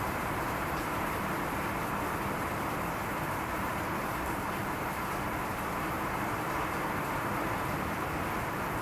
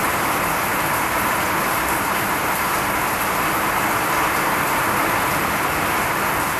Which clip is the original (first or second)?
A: second